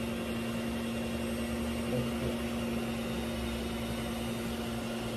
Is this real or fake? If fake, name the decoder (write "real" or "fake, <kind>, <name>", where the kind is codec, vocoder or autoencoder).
real